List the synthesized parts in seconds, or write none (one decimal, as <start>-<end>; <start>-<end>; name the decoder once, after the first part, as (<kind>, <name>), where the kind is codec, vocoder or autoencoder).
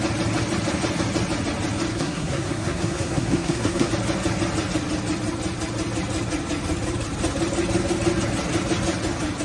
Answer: 1.9-3.9 (codec, SNAC)